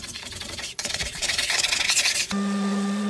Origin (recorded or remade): remade